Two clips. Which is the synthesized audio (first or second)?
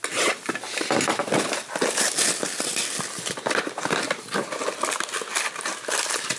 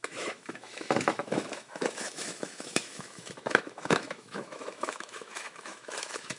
second